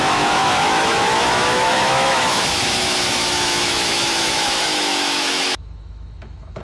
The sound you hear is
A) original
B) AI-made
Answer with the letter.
B